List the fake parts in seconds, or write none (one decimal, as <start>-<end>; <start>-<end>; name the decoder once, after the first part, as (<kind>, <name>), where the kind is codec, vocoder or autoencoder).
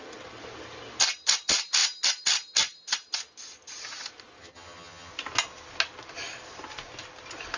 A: 4.4-5.1 (vocoder, HiFi-GAN)